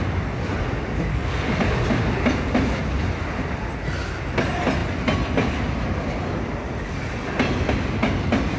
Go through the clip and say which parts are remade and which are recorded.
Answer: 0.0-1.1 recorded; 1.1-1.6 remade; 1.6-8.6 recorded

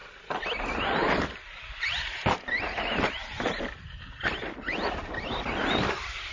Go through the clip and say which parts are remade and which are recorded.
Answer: 0.0-6.3 recorded